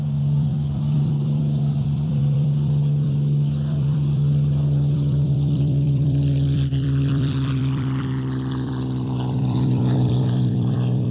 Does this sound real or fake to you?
fake